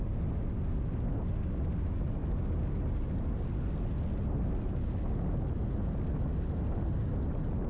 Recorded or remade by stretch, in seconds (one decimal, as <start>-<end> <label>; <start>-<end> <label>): 0.0-7.7 recorded